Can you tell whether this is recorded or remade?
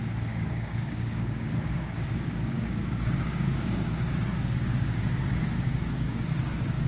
remade